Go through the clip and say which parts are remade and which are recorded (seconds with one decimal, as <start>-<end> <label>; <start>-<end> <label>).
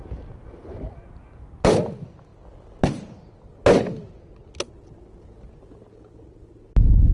0.0-7.1 recorded